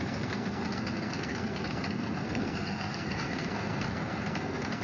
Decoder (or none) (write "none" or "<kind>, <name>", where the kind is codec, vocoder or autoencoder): codec, SNAC